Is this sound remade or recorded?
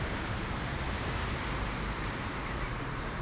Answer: remade